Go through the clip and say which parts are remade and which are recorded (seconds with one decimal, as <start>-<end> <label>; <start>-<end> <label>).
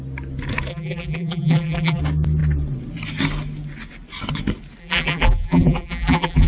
0.0-0.7 recorded; 0.7-2.0 remade; 2.0-4.8 recorded; 4.8-6.5 remade